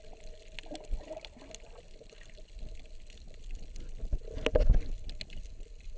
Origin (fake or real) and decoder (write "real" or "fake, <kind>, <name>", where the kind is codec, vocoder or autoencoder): real